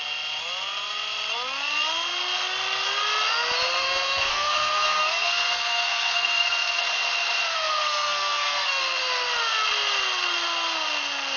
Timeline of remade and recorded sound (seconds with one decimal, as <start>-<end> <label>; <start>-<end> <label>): 0.0-3.8 recorded; 3.8-6.8 remade; 6.8-7.5 recorded; 7.5-8.8 remade; 8.8-11.4 recorded